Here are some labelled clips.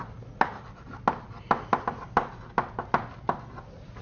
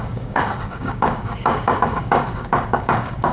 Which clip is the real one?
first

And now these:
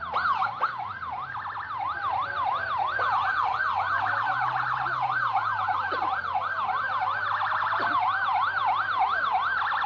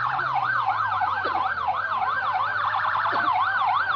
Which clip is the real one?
first